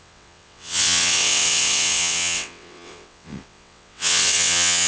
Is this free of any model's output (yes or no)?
no